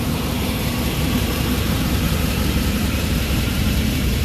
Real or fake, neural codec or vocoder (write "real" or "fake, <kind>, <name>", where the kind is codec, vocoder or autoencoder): fake, vocoder, BigVGAN v2